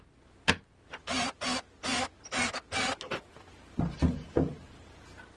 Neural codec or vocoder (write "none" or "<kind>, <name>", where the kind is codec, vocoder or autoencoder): none